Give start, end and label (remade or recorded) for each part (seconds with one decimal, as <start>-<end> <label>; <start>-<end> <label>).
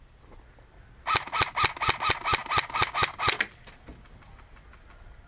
0.0-5.3 recorded